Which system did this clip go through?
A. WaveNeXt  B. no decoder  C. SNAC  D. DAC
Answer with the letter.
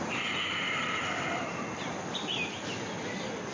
B